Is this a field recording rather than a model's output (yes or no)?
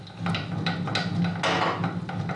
yes